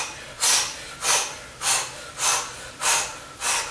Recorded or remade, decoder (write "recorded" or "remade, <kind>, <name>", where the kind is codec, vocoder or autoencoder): recorded